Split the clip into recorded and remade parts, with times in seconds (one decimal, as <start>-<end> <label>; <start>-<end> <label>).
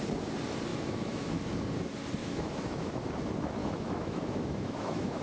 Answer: 0.0-0.7 recorded; 0.7-1.4 remade; 1.4-2.2 recorded; 2.2-3.0 remade; 3.0-3.6 recorded; 3.6-5.2 remade